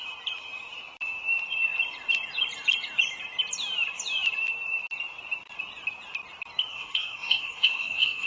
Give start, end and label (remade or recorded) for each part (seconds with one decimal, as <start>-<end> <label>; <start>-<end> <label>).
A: 0.0-6.7 recorded; 6.7-8.3 remade